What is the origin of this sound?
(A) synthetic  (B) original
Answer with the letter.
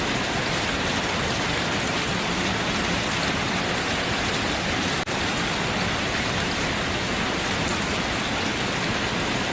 B